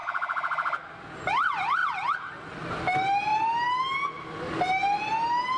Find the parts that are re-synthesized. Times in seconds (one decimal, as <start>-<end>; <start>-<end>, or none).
none

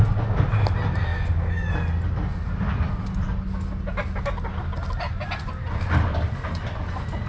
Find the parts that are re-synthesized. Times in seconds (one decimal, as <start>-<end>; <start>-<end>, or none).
none